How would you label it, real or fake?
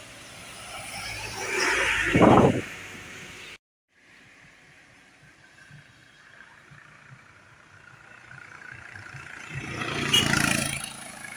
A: fake